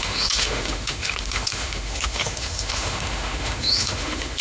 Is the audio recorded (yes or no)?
no